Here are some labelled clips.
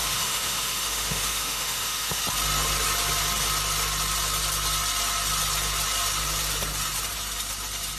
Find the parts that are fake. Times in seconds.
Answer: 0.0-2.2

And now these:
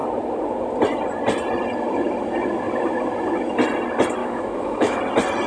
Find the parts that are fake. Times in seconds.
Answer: 4.2-5.0

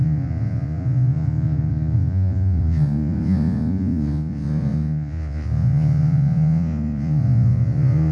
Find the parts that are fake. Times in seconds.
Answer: 0.0-8.1

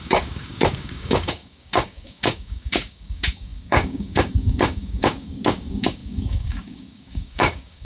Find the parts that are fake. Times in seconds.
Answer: 0.0-7.8

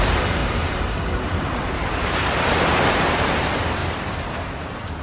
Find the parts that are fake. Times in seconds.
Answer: 0.0-5.0

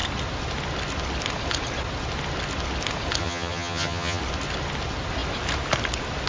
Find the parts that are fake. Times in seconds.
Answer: 3.2-4.2

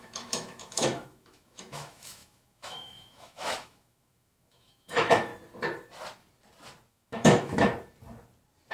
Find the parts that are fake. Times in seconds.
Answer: 0.0-5.3; 6.9-7.7

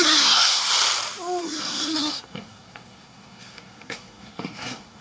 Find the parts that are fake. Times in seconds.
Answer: 0.0-0.7; 1.4-5.0